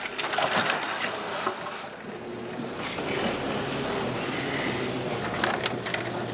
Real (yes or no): yes